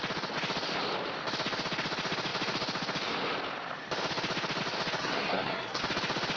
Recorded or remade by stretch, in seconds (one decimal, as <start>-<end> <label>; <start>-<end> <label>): 0.0-5.0 recorded; 5.0-5.8 remade; 5.8-6.4 recorded